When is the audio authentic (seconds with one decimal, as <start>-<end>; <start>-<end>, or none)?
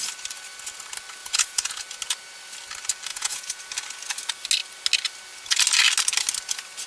0.0-1.2; 1.8-3.1; 3.6-6.9